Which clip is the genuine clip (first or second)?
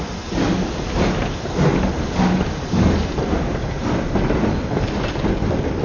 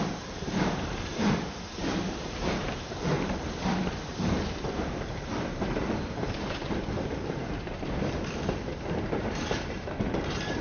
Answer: first